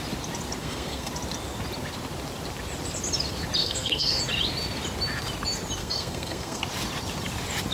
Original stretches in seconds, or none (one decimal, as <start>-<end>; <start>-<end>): 0.0-0.6; 1.1-3.6; 4.2-5.8; 6.6-7.7

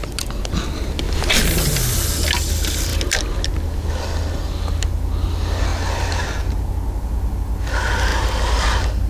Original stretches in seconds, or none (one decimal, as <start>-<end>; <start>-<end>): 0.0-9.1

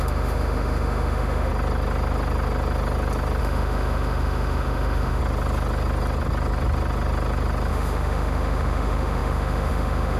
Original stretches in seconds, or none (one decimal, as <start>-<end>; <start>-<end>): 1.5-3.4; 5.2-7.7

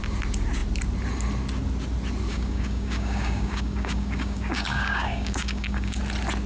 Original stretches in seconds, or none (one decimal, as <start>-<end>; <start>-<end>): 0.0-2.3; 6.0-6.5

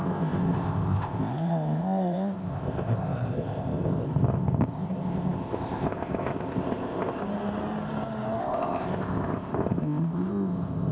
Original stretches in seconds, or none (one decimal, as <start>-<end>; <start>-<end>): 7.2-8.4

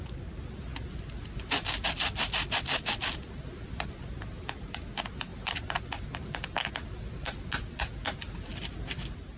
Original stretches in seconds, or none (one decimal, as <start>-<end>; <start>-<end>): 0.0-9.4